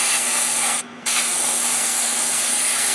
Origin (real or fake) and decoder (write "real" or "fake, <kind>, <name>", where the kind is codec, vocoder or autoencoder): fake, codec, SNAC